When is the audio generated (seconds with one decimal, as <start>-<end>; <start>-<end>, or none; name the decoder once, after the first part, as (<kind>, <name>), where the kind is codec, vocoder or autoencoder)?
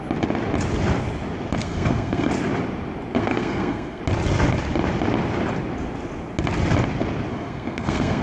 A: 1.6-2.3 (codec, SNAC); 3.2-4.0; 7.3-8.2